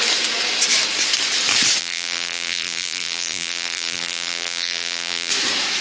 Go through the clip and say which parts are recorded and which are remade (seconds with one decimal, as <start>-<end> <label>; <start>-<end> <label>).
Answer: 0.0-1.8 recorded; 1.8-5.3 remade; 5.3-5.8 recorded